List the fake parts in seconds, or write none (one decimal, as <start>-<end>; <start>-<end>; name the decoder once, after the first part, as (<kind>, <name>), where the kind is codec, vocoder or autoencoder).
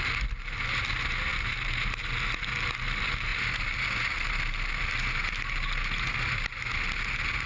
none